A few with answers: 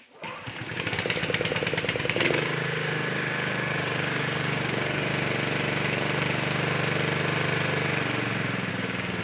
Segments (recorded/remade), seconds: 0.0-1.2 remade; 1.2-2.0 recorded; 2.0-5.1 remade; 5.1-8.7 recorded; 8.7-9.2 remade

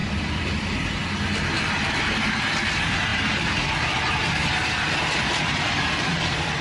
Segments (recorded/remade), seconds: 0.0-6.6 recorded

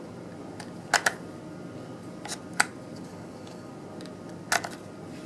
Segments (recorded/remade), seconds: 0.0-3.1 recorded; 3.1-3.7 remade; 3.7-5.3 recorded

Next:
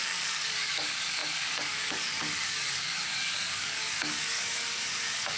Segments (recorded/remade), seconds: 0.0-5.4 remade